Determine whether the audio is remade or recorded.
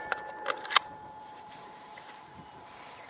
remade